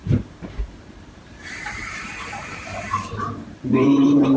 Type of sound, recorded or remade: remade